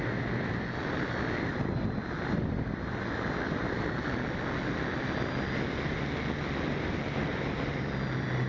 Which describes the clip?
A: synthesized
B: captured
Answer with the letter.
B